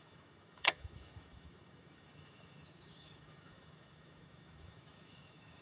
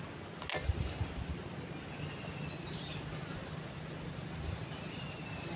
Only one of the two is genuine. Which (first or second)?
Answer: second